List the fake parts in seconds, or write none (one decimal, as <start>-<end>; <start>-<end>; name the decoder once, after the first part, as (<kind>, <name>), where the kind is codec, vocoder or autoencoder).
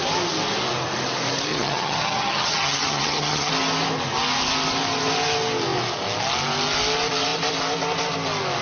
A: 1.5-3.5 (vocoder, HiFi-GAN)